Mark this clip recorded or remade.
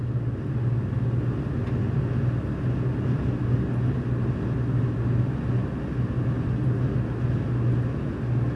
recorded